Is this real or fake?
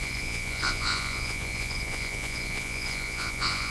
fake